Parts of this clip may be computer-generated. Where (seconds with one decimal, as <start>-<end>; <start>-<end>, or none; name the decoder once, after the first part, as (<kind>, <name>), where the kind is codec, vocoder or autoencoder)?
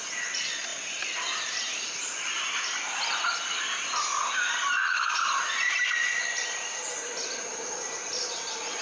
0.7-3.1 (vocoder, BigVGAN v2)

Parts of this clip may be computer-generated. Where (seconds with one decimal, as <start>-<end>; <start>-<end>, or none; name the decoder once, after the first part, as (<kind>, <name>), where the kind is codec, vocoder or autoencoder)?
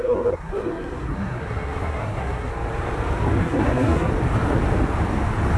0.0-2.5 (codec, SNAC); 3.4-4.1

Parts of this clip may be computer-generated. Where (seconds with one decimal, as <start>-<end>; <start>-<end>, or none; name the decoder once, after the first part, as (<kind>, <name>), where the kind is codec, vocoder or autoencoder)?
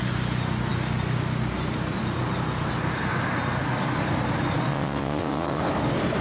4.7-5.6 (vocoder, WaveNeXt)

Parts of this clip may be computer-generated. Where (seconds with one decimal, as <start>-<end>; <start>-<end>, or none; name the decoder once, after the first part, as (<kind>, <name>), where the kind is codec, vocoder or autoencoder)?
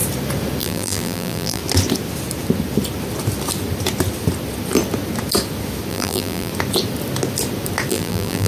0.6-1.6 (vocoder, BigVGAN v2); 5.9-6.5; 7.9-8.5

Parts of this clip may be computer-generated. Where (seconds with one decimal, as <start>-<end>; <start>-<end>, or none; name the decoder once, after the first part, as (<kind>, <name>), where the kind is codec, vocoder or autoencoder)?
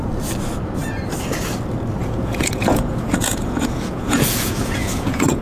2.0-5.4 (vocoder, Vocos)